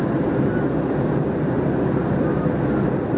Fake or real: real